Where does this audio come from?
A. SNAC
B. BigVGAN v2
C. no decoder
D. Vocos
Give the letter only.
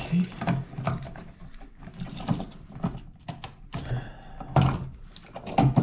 C